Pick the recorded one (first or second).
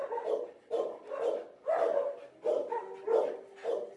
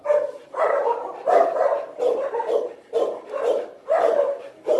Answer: first